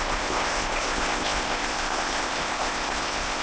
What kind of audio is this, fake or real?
fake